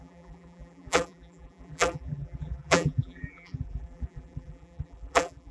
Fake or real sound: fake